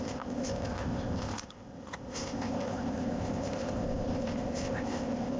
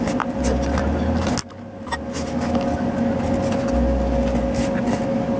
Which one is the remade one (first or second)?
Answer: first